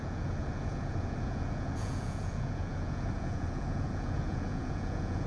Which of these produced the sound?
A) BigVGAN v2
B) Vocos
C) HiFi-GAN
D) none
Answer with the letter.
B